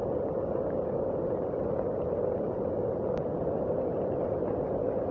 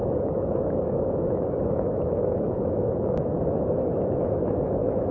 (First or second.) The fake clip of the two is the second